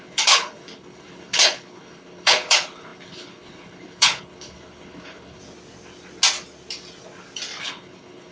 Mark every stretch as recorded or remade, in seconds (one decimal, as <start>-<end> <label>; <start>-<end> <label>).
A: 0.0-5.4 remade; 5.4-7.6 recorded; 7.6-8.3 remade